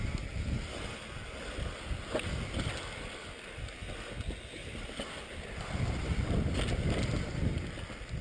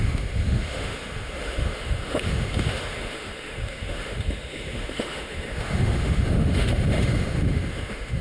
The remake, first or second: second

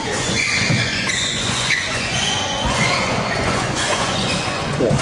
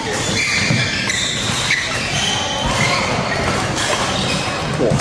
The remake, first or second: first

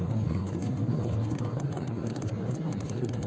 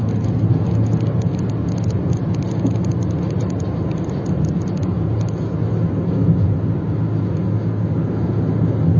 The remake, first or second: first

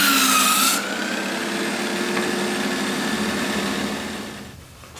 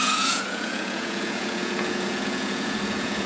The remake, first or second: second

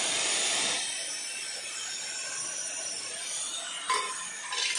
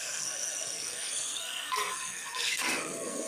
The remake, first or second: second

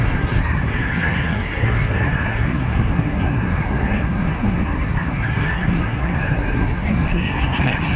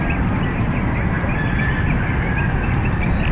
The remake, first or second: first